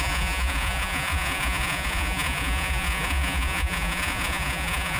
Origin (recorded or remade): remade